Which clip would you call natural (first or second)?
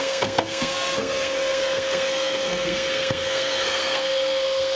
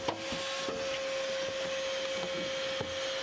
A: second